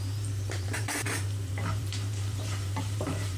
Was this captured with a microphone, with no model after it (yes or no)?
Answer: no